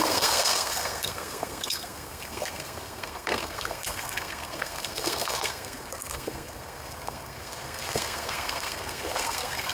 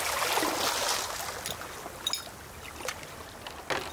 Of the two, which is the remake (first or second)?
first